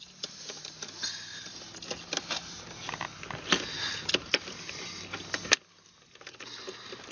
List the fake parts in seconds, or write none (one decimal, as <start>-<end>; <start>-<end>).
none